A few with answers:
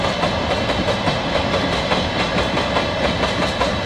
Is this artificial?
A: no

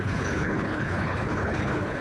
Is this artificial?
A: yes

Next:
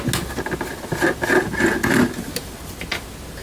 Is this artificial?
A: no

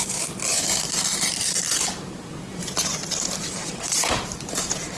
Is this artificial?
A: yes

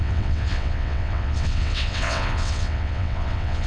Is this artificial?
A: yes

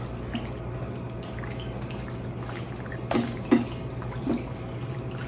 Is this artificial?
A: no